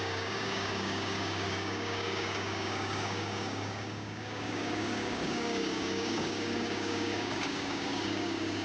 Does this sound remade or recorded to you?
remade